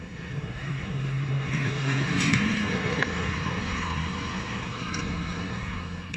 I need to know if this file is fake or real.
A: fake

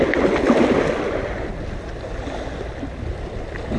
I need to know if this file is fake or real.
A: real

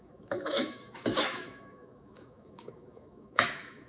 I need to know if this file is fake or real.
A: fake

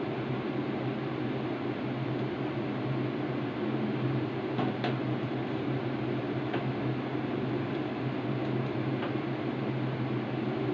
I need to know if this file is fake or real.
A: real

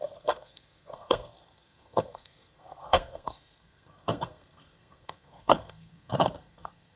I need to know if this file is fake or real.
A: fake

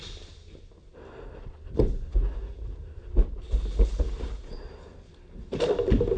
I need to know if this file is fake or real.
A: real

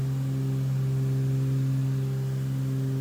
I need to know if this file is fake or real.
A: real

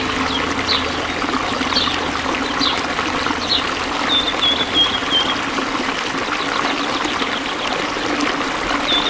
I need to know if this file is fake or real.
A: real